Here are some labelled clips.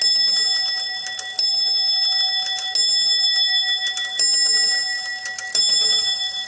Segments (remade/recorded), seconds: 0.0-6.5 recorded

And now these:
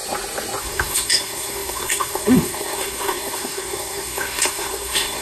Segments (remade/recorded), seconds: 0.0-0.6 recorded; 0.6-5.2 remade

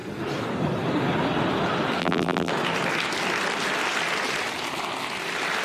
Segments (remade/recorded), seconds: 0.0-2.0 recorded; 2.0-2.5 remade; 2.5-5.6 recorded

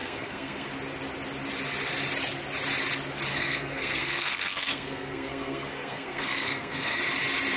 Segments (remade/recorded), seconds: 0.0-0.7 remade; 0.7-3.3 recorded; 3.3-7.0 remade; 7.0-7.6 recorded